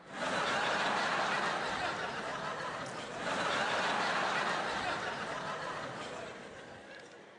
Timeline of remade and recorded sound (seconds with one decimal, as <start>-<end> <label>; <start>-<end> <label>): 0.0-2.3 recorded; 2.3-3.8 remade; 3.8-7.4 recorded